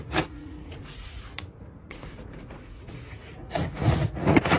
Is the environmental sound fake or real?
fake